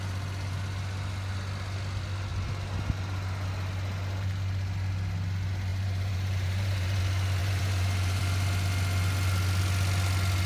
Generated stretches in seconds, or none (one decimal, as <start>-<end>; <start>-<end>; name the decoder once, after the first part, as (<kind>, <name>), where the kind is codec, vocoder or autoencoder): 5.7-7.0 (vocoder, BigVGAN v2); 7.4-8.2